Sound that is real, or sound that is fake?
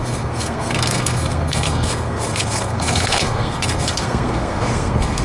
fake